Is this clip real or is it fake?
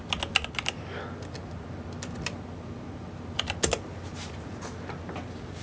real